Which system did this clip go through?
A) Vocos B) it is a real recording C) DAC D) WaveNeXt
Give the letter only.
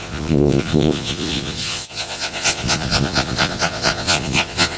A